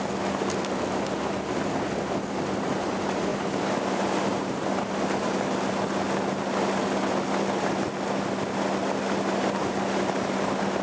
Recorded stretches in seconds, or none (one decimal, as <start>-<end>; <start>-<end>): 0.0-10.8